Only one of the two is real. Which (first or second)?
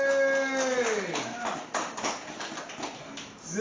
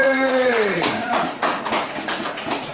first